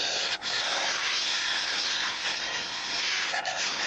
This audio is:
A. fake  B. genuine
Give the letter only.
A